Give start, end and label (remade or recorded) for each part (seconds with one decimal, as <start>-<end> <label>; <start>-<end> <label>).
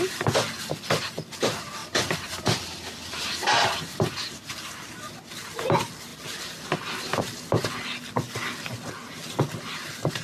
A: 0.0-1.8 recorded; 1.8-4.0 remade; 4.0-10.2 recorded